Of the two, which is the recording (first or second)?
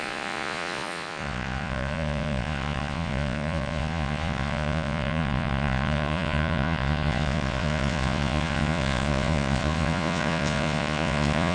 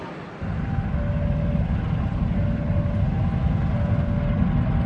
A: second